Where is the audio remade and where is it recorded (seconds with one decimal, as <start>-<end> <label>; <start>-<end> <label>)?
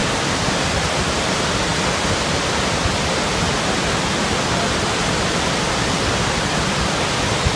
0.0-7.6 recorded